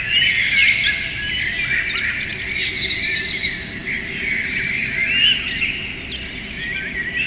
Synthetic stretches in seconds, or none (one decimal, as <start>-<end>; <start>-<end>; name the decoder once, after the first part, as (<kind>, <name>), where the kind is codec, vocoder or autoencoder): none